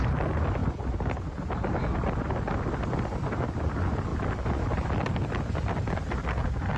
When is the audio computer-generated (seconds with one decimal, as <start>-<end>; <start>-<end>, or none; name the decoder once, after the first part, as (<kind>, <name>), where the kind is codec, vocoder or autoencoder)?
none